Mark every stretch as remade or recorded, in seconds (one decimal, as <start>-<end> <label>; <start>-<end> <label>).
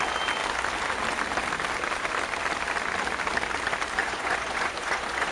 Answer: 0.0-4.0 recorded; 4.0-5.3 remade